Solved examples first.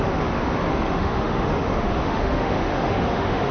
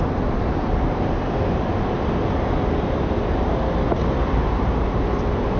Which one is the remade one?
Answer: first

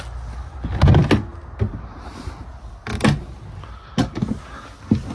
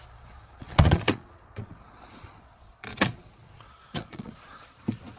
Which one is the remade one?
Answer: second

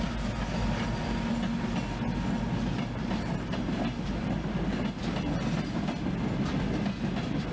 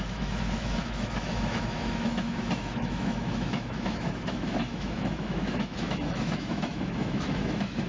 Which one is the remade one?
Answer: second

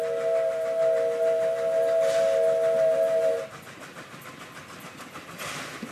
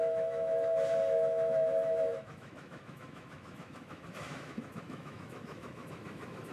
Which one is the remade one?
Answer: second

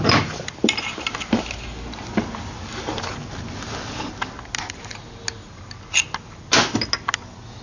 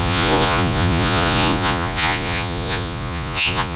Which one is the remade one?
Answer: second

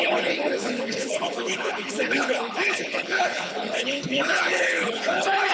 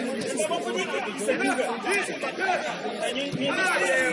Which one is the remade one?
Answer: first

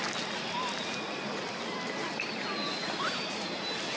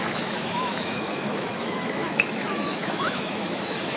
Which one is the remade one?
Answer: second